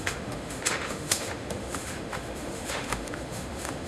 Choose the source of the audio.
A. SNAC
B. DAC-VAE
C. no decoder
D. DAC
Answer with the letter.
B